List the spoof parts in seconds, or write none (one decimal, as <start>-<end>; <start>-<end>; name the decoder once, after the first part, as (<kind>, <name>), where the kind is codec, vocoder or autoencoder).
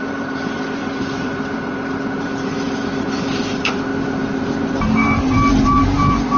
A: 0.0-6.4 (vocoder, BigVGAN v2)